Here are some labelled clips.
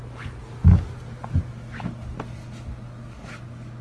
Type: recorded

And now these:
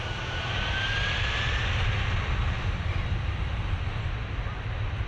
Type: recorded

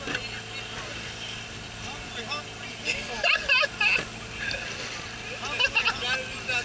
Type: recorded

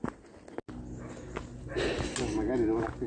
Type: recorded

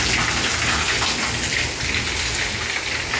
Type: recorded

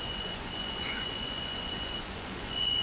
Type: remade